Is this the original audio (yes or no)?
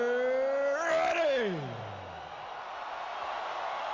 yes